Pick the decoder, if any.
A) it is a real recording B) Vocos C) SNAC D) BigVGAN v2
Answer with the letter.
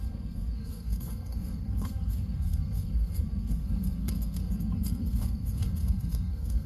C